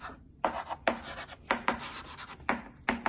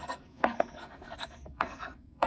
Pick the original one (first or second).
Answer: first